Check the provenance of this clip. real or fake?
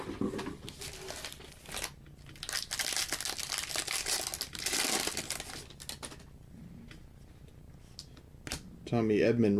real